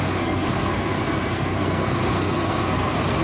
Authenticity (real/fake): fake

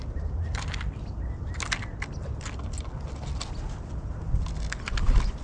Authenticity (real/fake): real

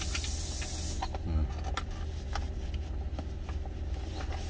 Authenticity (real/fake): real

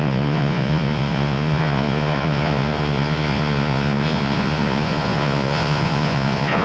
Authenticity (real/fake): fake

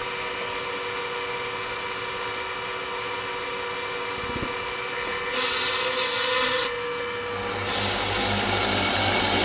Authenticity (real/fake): real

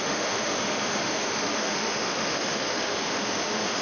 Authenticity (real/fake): fake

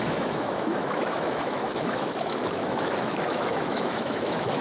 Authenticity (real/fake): fake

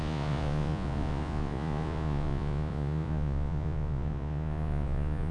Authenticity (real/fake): fake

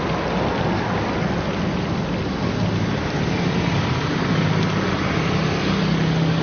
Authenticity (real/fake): real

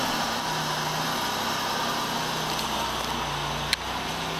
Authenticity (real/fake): real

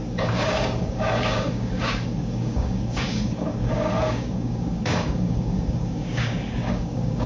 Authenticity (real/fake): fake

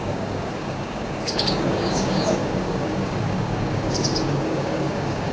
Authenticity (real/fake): fake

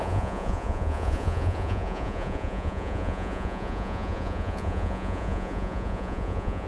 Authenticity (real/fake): fake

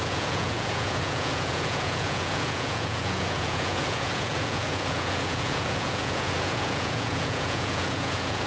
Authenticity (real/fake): fake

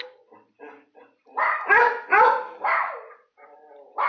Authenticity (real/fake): real